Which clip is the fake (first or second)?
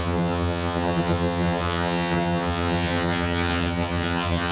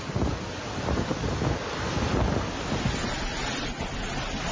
first